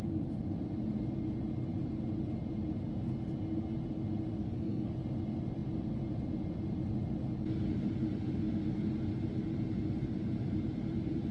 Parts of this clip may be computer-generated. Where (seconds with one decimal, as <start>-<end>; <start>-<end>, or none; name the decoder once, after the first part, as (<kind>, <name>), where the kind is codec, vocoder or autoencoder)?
4.4-4.9 (codec, SNAC)